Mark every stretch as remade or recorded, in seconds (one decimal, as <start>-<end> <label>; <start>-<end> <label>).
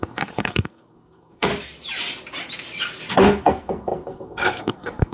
0.0-1.5 remade; 1.5-3.1 recorded; 3.1-5.1 remade